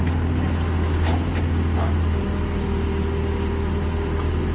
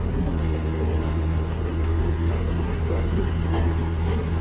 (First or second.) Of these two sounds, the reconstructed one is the second